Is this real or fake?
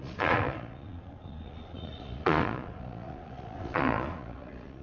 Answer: fake